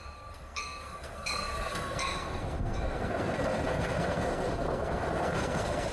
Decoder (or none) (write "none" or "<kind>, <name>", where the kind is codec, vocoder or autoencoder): codec, SNAC